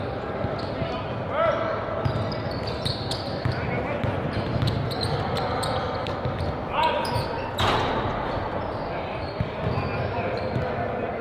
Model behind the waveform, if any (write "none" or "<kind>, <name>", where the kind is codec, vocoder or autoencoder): none